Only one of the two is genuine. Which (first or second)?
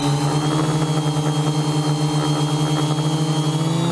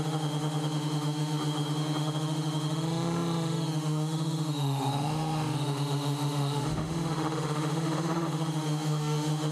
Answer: first